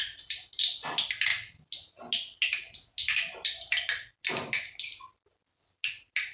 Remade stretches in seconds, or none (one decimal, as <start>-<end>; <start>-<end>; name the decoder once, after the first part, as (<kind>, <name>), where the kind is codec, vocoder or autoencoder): none